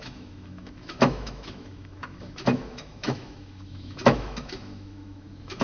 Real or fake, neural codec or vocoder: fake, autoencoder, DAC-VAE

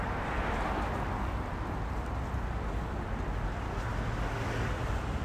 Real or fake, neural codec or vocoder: real